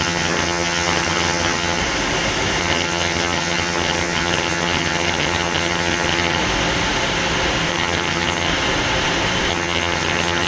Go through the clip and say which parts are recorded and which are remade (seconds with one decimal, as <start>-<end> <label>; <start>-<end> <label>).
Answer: 0.0-1.8 remade; 1.8-2.6 recorded; 2.6-6.4 remade; 6.4-7.7 recorded; 7.7-8.5 remade; 8.5-9.5 recorded; 9.5-10.5 remade